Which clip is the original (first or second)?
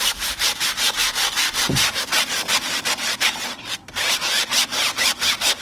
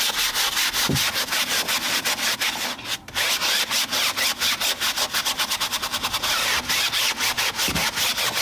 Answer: second